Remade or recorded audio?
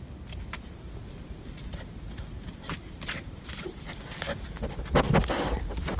recorded